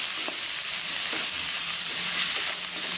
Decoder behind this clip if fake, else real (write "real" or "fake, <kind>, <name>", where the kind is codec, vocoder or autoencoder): fake, vocoder, BigVGAN v2